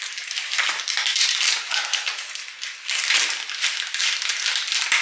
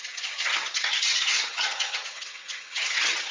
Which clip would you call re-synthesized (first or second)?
second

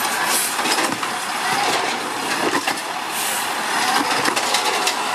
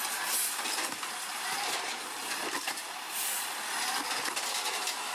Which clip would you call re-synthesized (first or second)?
second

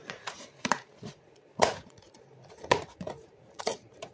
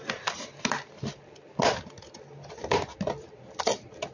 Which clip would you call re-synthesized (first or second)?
first